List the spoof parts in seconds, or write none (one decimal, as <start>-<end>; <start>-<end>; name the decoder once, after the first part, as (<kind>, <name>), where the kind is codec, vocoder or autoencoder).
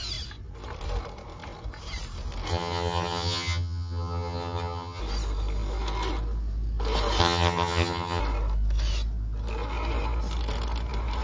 2.5-5.0 (vocoder, HiFi-GAN); 7.2-8.2